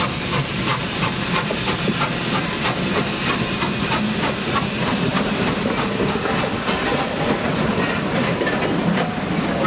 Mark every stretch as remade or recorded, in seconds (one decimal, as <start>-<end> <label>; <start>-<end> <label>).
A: 0.0-9.7 recorded